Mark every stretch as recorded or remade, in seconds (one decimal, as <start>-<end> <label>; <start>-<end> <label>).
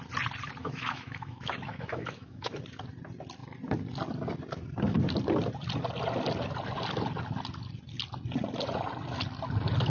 0.0-0.6 recorded; 0.6-2.5 remade; 2.5-9.9 recorded